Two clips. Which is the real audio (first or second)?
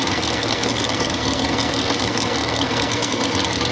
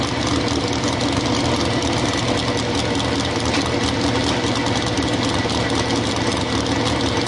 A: second